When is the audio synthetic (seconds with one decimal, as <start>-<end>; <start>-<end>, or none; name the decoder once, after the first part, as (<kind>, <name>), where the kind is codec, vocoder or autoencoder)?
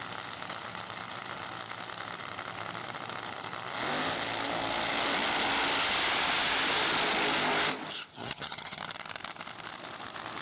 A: 8.1-8.8 (vocoder, HiFi-GAN)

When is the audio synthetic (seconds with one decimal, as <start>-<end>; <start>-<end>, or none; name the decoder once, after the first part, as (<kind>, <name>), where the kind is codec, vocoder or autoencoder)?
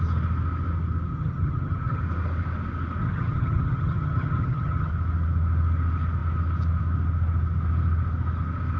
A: 1.1-2.0 (vocoder, HiFi-GAN); 3.0-4.9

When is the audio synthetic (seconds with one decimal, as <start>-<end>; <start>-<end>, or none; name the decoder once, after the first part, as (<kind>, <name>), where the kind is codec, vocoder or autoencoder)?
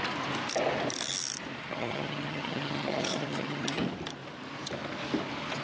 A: 1.6-3.8 (vocoder, HiFi-GAN)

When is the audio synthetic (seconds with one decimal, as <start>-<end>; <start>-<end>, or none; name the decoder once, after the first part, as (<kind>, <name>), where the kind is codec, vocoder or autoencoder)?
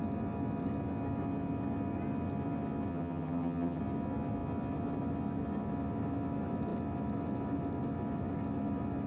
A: 2.9-3.8 (vocoder, HiFi-GAN)